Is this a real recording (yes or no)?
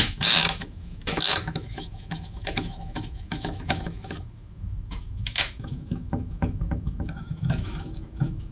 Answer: no